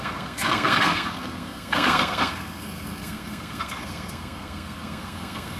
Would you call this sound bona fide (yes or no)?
no